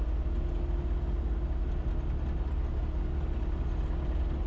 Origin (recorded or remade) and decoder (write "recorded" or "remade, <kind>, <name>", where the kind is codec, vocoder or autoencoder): recorded